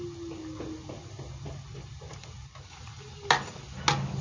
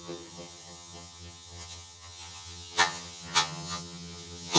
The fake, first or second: second